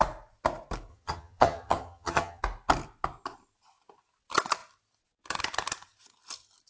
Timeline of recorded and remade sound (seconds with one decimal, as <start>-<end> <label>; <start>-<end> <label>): 0.0-0.9 recorded; 0.9-2.4 remade; 2.4-6.7 recorded